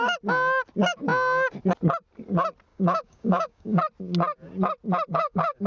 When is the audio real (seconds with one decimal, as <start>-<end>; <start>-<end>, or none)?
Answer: 0.0-2.7; 3.8-5.1